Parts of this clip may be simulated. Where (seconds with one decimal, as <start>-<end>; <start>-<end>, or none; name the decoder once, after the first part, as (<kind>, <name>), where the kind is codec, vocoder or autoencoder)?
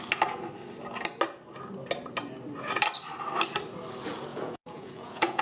4.3-5.4 (vocoder, Vocos)